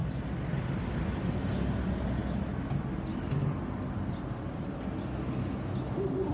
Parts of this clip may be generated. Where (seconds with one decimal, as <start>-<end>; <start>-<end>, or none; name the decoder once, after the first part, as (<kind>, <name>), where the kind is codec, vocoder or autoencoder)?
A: none